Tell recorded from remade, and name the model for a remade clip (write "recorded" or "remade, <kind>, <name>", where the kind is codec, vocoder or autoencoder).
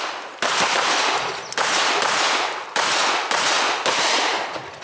recorded